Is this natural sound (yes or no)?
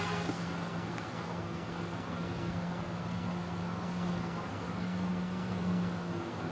no